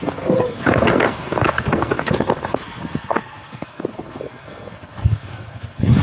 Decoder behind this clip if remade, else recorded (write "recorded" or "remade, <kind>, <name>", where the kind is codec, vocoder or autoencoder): remade, codec, SNAC